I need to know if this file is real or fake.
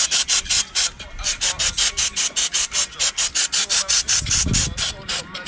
real